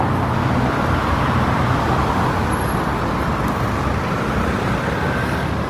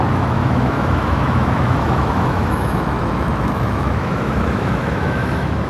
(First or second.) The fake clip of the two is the second